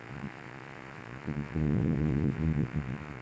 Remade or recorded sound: remade